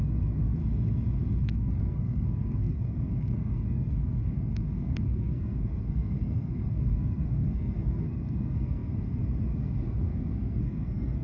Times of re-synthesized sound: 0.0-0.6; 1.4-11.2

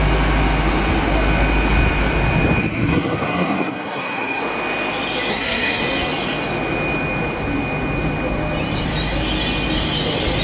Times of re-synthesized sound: 2.6-4.4; 5.3-5.8

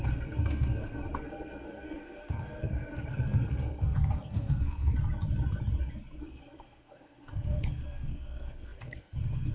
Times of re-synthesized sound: 0.0-4.9; 6.2-9.5